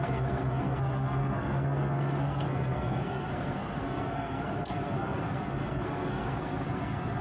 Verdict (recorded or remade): remade